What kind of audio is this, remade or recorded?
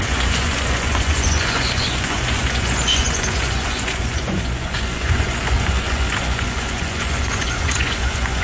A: remade